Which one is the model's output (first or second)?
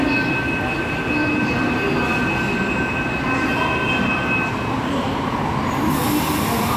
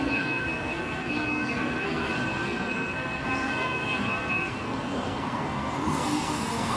second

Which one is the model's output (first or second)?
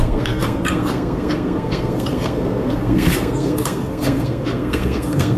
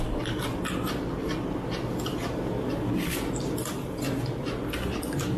first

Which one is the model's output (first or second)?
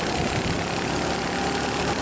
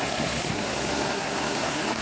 second